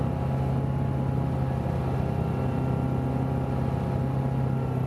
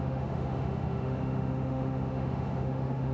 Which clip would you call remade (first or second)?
second